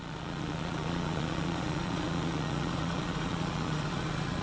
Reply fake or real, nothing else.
fake